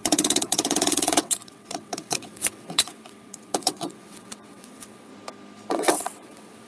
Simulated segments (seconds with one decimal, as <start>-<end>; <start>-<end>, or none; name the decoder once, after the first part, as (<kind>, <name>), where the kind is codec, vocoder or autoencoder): 0.0-5.1 (vocoder, WaveNeXt); 5.7-6.7